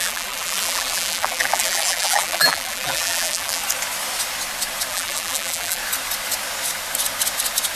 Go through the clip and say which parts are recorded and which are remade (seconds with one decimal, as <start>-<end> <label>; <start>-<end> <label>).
0.0-3.6 remade; 3.6-4.9 recorded; 4.9-5.8 remade; 5.8-7.8 recorded